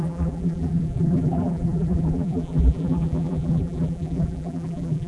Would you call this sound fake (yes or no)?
yes